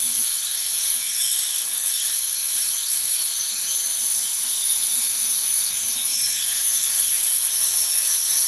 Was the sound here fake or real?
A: fake